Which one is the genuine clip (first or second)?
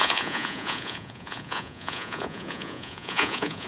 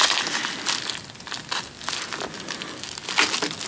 second